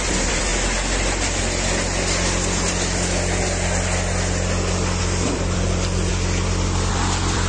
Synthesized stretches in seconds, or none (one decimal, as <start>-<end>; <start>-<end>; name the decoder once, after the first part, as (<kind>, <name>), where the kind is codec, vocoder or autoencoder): 0.0-0.5 (vocoder, BigVGAN v2); 5.0-6.1; 6.9-7.5